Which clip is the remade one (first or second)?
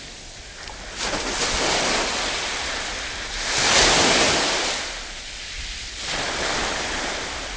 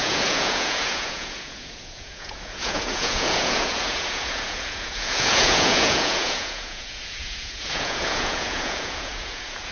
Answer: second